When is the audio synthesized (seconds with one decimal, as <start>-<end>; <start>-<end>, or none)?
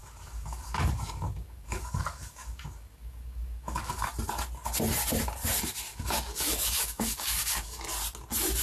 0.0-4.1; 5.9-7.8